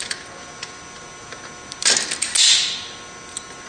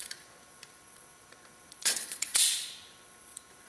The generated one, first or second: second